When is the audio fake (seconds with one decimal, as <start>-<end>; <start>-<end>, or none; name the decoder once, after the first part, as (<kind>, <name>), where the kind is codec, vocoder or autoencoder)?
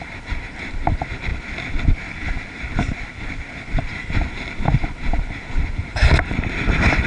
0.0-1.3 (vocoder, BigVGAN v2); 3.8-7.1